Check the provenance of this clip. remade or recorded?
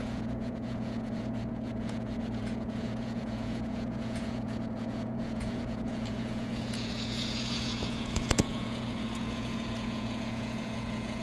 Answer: remade